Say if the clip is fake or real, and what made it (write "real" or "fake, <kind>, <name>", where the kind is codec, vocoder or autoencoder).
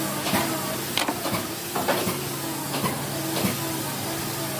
real